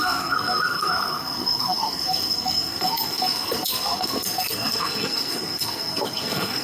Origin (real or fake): fake